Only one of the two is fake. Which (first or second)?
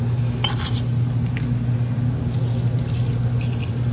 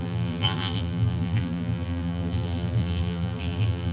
second